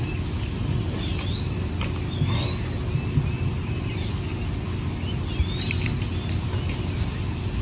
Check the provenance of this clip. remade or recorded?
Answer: recorded